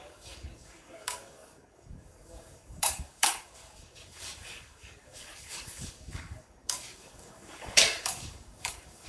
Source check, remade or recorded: remade